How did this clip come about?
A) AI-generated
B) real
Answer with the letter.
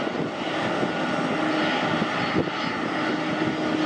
B